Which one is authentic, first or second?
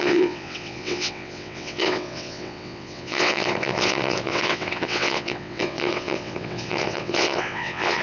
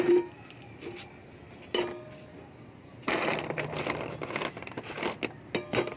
second